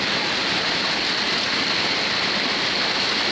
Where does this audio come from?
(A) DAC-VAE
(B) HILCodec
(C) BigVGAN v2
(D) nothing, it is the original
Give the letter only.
D